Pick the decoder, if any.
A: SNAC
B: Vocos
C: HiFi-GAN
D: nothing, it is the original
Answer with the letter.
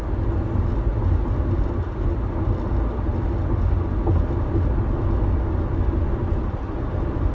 D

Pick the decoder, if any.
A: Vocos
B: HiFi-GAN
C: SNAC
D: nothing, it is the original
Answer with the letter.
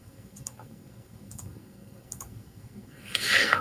C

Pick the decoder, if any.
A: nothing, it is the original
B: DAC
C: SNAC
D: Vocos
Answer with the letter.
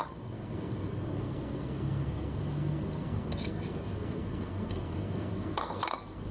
C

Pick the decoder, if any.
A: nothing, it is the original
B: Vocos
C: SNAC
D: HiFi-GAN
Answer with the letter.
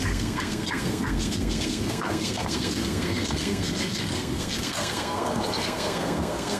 C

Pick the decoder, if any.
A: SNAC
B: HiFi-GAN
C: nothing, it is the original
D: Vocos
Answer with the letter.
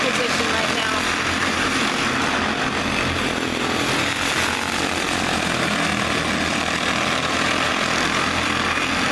C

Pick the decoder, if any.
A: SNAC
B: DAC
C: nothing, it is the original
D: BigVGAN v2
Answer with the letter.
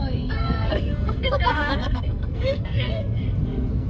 A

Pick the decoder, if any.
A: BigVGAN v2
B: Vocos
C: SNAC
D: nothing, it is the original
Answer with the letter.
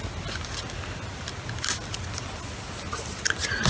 D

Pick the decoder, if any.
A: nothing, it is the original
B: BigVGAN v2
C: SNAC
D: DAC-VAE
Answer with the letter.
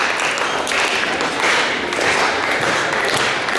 A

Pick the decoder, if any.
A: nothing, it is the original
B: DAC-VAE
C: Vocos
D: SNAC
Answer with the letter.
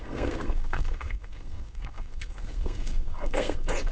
D